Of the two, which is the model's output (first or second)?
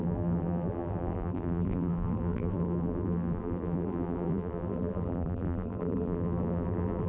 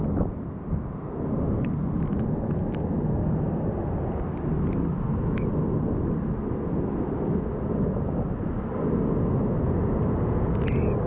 first